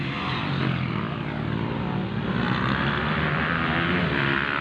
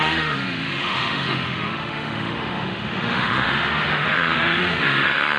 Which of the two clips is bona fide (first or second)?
first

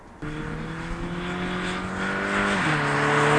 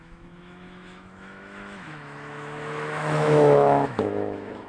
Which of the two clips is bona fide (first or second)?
first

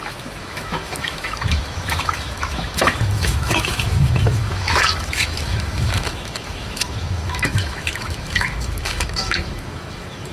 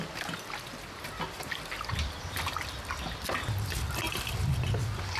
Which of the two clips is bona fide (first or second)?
second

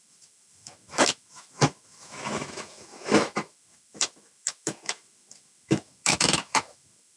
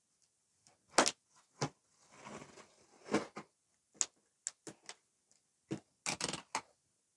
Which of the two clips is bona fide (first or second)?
second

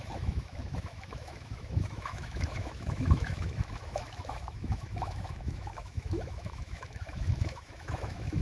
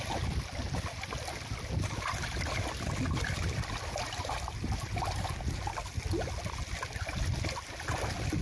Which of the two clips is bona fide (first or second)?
second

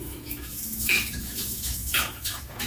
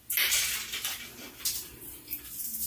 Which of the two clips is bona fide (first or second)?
second